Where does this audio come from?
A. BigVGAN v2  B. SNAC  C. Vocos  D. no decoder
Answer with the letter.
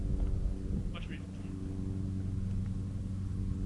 D